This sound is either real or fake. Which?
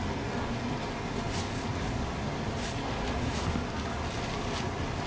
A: real